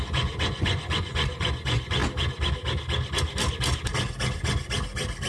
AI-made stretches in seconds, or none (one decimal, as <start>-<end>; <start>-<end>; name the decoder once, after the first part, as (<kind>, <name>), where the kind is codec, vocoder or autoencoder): 0.0-2.0 (vocoder, Vocos)